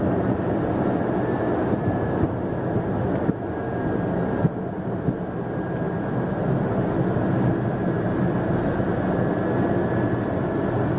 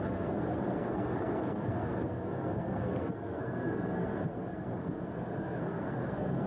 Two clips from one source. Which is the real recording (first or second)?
first